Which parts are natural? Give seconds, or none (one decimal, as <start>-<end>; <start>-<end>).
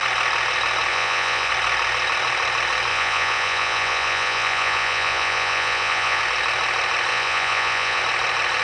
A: 0.0-0.9; 1.5-2.9; 6.2-7.1; 8.0-8.6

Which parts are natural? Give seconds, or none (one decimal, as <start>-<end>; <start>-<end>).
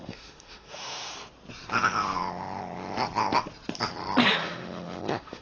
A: 1.1-4.3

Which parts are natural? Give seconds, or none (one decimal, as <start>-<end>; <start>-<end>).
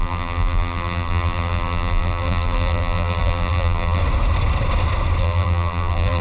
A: 4.0-5.2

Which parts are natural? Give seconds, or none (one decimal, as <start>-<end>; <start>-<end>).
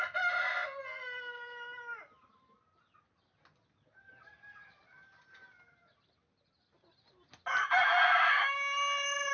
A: 0.0-9.3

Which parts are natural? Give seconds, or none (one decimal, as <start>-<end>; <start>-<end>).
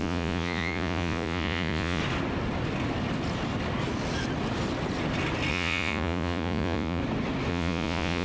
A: 2.0-5.5; 7.0-7.5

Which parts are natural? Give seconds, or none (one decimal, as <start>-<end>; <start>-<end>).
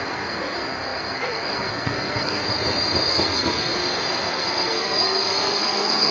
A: 2.4-3.1; 3.7-4.3